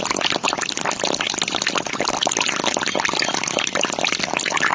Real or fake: real